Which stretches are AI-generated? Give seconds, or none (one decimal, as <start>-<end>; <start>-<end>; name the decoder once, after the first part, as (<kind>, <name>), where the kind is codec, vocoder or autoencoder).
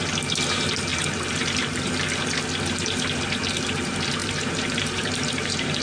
0.9-1.9 (vocoder, BigVGAN v2); 4.2-5.8